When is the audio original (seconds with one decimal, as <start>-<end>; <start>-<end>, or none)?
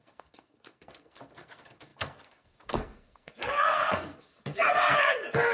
none